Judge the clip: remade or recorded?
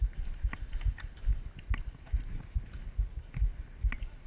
recorded